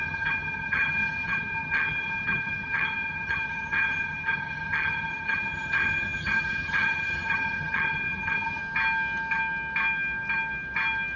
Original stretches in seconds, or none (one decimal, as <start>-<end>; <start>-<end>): 8.6-11.2